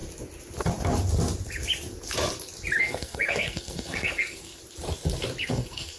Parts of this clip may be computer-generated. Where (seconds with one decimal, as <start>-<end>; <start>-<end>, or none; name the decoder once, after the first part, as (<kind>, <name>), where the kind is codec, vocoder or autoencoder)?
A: 2.8-4.6 (codec, SNAC); 5.4-6.0